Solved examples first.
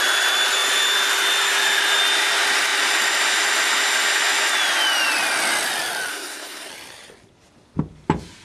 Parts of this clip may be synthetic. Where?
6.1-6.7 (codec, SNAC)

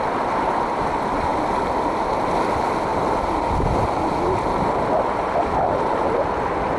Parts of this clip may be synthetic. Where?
none

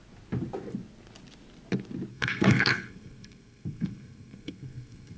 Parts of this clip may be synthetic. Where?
2.1-5.2 (codec, SNAC)

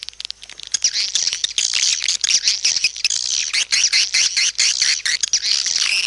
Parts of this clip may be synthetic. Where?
none

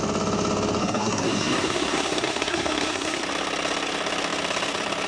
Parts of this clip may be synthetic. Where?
0.8-3.2 (codec, SNAC)

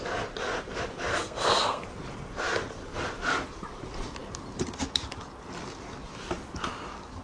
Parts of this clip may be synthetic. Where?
1.1-1.8 (codec, SNAC)

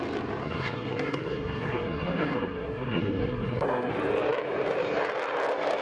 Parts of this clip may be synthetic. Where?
0.4-3.9 (codec, SNAC)

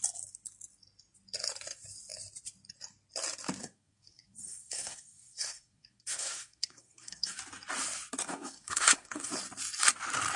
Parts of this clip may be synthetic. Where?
3.6-7.4 (codec, SNAC); 8.2-9.3